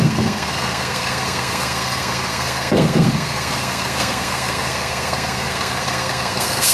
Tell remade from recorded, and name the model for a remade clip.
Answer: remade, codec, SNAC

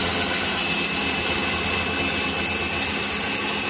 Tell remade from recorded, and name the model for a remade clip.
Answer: recorded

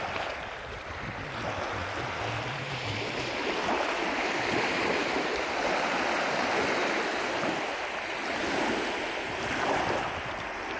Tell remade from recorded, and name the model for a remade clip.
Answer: remade, vocoder, BigVGAN v2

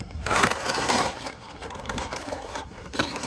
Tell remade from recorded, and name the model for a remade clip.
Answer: remade, codec, SNAC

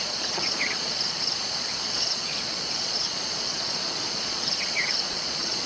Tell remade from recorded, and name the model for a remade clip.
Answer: remade, vocoder, Vocos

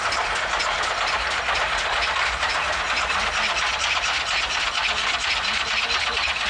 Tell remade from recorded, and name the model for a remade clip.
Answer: recorded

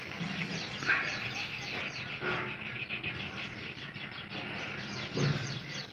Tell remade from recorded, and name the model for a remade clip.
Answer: recorded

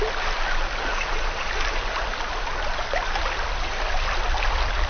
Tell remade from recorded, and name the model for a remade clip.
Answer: recorded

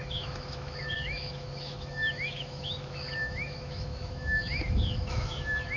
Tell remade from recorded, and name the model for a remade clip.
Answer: remade, autoencoder, DAC-VAE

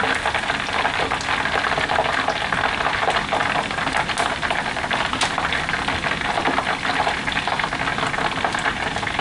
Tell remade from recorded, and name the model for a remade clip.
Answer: recorded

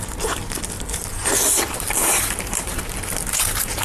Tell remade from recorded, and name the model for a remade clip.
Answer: remade, vocoder, BigVGAN v2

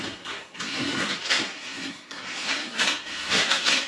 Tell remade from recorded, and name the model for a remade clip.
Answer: remade, codec, SNAC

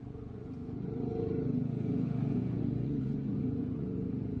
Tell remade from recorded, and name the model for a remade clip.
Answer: remade, vocoder, Vocos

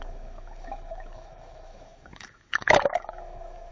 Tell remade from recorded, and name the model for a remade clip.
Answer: remade, autoencoder, DAC-VAE